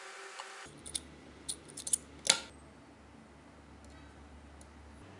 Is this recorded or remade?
recorded